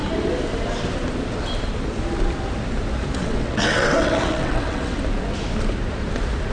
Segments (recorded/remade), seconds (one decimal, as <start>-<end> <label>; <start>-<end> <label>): 0.0-3.2 recorded; 3.2-5.0 remade; 5.0-6.5 recorded